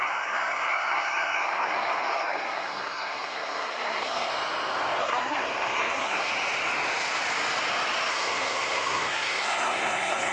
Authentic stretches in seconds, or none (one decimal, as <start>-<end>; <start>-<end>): 4.3-5.0; 6.3-8.1

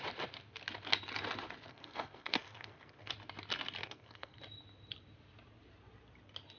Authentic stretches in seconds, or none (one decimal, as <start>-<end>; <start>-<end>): 0.0-1.7; 3.1-3.8; 4.4-6.6

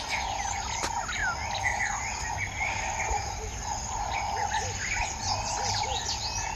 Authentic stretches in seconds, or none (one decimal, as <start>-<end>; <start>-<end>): 0.0-6.6

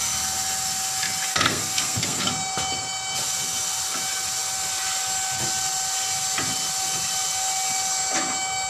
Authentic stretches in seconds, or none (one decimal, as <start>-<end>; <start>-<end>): 0.0-1.3; 2.3-8.7